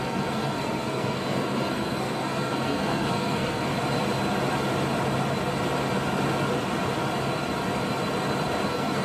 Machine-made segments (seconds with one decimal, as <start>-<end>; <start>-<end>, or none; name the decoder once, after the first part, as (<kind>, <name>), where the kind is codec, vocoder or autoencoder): 0.0-3.7 (codec, SNAC); 8.6-9.0